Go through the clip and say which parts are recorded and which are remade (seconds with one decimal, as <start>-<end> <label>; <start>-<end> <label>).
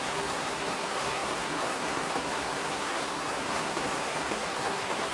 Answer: 0.0-5.1 remade